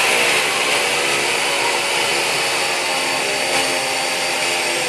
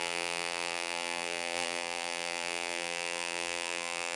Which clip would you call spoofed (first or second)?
second